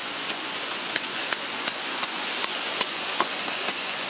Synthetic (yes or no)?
yes